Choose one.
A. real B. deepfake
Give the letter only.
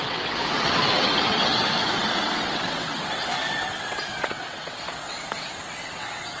B